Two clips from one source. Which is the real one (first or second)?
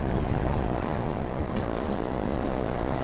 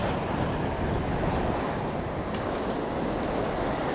second